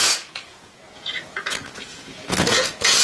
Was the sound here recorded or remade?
remade